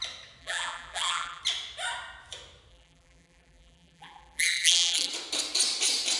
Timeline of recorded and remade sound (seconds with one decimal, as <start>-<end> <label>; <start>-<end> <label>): 0.0-0.4 recorded; 0.4-1.4 remade; 1.4-2.7 recorded; 2.7-5.1 remade; 5.1-6.2 recorded